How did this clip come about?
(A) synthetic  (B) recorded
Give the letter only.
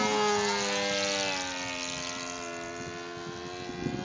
B